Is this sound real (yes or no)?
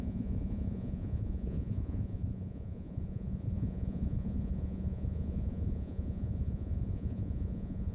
no